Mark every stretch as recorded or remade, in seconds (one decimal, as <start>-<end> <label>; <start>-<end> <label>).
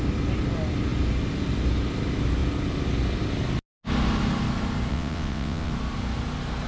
0.0-4.9 recorded; 4.9-5.7 remade; 5.7-6.7 recorded